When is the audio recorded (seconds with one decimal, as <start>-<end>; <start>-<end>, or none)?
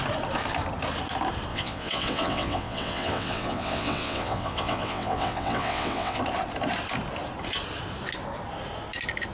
0.0-1.5; 6.2-9.3